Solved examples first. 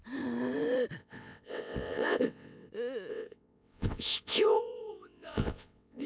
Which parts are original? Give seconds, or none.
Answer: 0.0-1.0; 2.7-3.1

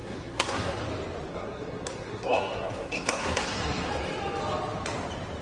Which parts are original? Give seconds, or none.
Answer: 0.8-1.3; 3.9-5.4

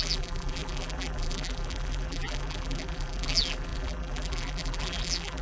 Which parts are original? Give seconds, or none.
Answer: none

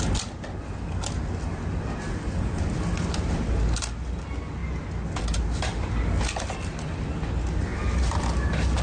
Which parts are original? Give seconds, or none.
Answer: 0.0-8.8